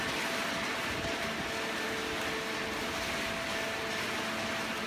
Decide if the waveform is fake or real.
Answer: real